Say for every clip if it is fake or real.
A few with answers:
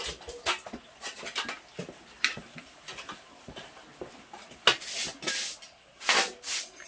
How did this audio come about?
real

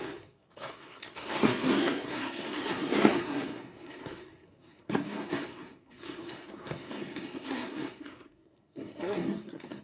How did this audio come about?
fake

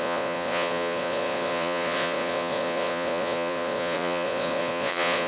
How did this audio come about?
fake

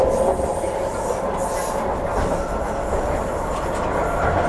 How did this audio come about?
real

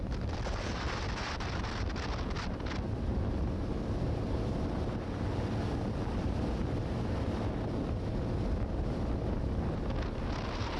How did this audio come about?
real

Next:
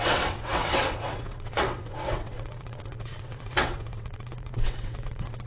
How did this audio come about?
fake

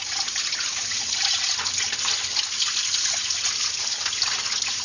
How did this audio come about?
real